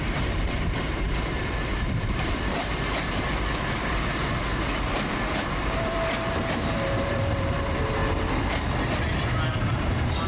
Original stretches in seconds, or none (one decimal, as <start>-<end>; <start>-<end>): 8.0-9.5